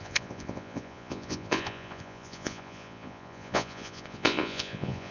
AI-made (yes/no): yes